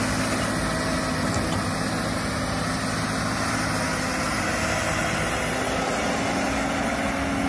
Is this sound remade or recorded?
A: recorded